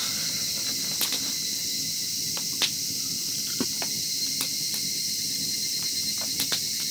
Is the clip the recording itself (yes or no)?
yes